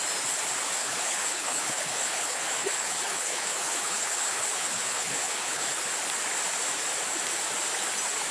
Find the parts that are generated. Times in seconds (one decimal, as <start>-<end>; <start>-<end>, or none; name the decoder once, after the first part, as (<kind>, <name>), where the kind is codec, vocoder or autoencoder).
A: 0.8-5.8 (codec, HILCodec)